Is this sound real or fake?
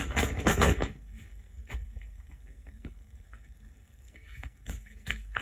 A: fake